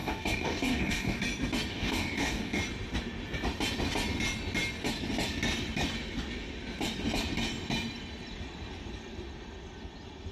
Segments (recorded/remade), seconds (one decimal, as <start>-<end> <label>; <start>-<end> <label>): 0.0-1.2 remade; 1.2-1.7 recorded; 1.7-2.6 remade; 2.6-10.3 recorded